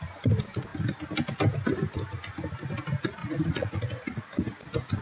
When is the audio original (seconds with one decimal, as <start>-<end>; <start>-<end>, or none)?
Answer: 0.0-3.2; 4.2-5.0